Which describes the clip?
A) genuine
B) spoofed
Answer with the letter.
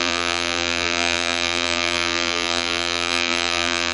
B